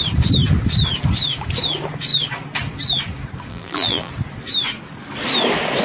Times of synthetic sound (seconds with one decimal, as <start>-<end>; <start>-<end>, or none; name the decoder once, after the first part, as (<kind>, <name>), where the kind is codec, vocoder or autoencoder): 3.5-4.1 (vocoder, BigVGAN v2)